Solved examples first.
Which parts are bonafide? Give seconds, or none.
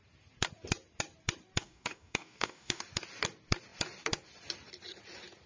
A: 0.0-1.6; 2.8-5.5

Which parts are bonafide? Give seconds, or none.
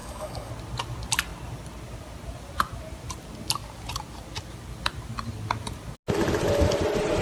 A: 0.5-7.2